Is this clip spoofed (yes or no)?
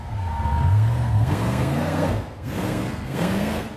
yes